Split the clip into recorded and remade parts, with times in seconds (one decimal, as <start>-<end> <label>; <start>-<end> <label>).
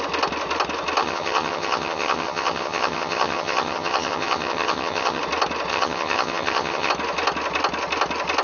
0.0-1.0 recorded; 1.0-5.2 remade; 5.2-5.7 recorded; 5.7-6.9 remade; 6.9-8.4 recorded